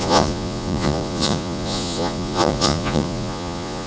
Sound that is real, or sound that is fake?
fake